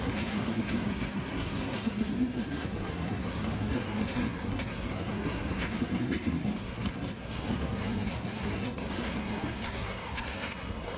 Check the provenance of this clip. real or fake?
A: fake